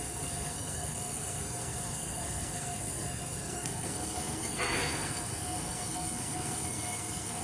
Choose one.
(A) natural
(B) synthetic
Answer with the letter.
B